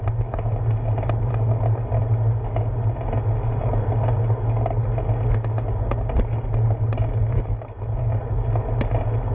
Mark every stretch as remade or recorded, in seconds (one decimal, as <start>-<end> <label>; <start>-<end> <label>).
0.0-9.3 recorded